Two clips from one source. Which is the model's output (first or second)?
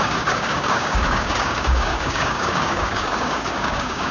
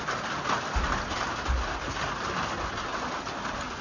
first